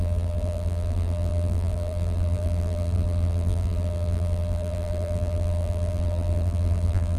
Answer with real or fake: fake